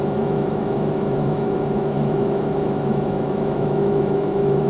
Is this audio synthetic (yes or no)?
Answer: yes